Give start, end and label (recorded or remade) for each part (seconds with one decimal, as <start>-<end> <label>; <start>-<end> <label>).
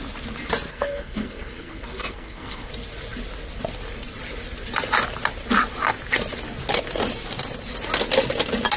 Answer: 0.0-0.7 recorded; 0.7-2.7 remade; 2.7-8.8 recorded